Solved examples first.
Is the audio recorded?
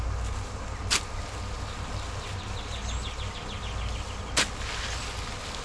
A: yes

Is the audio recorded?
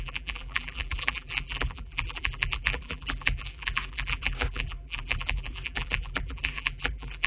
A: no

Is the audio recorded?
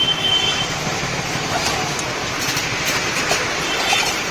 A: no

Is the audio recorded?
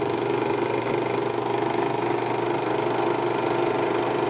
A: yes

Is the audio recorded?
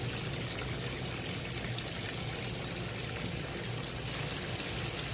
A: yes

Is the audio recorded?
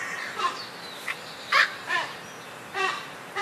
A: no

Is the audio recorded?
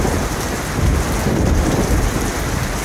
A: no